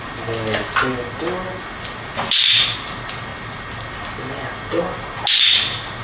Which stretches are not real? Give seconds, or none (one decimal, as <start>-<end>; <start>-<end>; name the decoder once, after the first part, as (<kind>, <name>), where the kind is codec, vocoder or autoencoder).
none